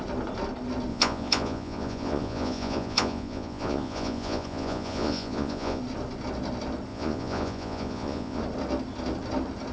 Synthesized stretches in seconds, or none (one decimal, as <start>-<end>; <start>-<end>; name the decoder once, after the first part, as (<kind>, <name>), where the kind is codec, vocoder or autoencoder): 0.9-5.8 (vocoder, Vocos); 6.9-8.4